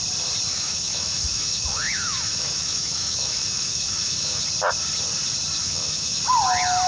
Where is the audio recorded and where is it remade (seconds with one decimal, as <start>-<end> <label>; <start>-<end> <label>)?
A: 0.0-0.5 recorded; 0.5-4.4 remade; 4.4-5.6 recorded; 5.6-6.2 remade; 6.2-6.9 recorded